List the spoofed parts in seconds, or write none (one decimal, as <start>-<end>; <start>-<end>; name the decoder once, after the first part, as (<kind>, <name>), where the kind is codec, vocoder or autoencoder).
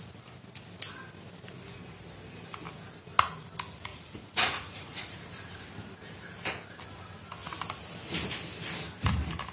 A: 3.9-5.3 (vocoder, Vocos)